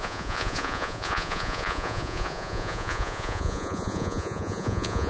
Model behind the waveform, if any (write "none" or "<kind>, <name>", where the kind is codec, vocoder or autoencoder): vocoder, Vocos